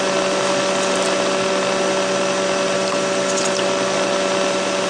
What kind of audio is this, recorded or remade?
recorded